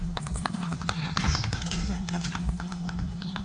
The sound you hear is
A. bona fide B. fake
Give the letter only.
B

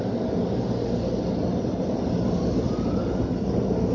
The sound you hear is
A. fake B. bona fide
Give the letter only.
B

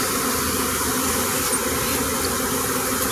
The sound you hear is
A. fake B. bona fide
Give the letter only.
B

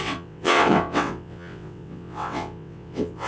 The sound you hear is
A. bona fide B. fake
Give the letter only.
B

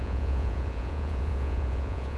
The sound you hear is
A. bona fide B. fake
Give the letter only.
B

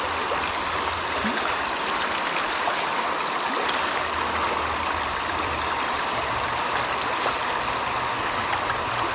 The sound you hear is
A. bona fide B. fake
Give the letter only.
A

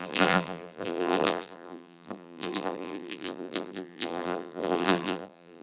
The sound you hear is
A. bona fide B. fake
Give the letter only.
B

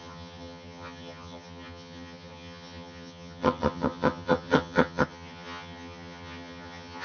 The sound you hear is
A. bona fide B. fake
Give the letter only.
B